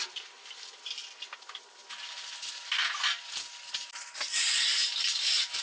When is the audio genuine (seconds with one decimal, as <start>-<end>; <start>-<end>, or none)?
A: 0.0-5.6